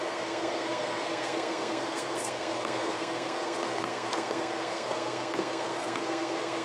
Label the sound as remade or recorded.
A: remade